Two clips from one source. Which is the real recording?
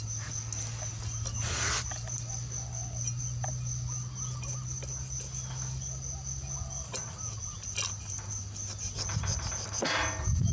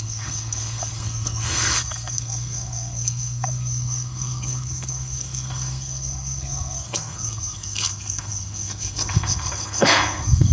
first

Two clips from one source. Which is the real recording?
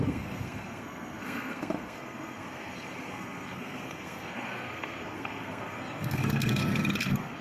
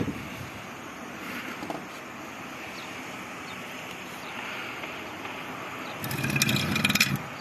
second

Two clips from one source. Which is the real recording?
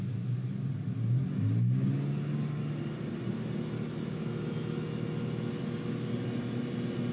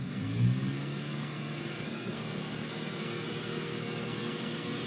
first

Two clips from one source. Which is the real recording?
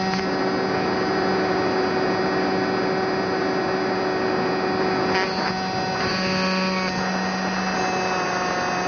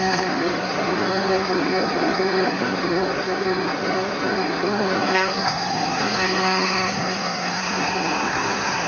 first